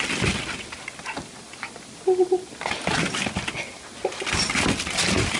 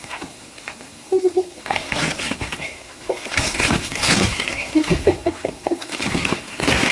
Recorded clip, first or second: first